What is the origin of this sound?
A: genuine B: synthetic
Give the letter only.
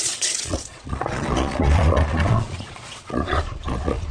B